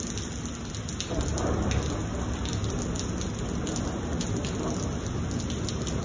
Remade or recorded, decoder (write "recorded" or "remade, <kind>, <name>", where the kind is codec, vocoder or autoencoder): recorded